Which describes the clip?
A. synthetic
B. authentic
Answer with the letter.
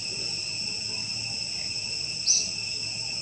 B